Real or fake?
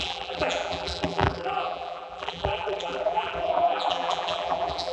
fake